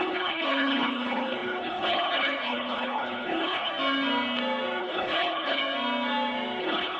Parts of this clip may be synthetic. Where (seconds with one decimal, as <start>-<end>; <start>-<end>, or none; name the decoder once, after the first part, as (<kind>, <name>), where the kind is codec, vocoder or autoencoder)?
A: 0.0-3.7 (codec, HILCodec); 4.8-5.6; 6.6-7.0